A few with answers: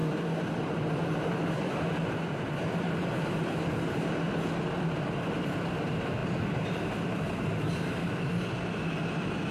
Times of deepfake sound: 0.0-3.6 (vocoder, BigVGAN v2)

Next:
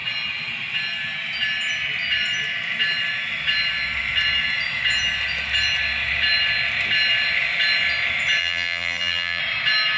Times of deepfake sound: 8.4-9.4 (vocoder, BigVGAN v2)

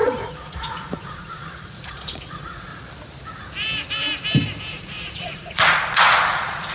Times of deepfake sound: 0.0-2.7 (vocoder, Vocos); 4.7-6.7